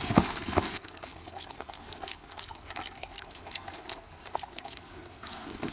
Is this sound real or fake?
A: fake